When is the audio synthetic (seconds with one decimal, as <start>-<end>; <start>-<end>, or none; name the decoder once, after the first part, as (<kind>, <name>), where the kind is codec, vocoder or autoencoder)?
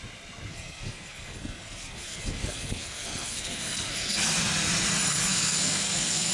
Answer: 0.5-4.2 (codec, SNAC); 5.1-6.3